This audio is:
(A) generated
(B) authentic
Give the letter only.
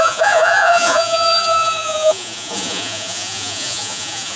A